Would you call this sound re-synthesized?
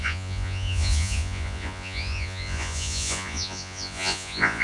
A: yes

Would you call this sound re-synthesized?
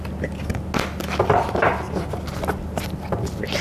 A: no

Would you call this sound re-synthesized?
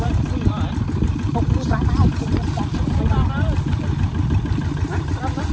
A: no